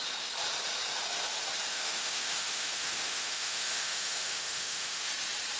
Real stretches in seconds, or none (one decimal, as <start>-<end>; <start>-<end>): 0.0-1.7; 5.1-5.6